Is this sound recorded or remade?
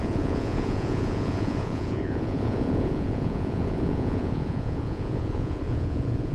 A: remade